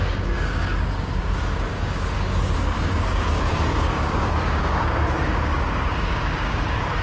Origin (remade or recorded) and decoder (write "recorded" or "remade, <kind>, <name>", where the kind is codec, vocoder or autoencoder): remade, codec, DAC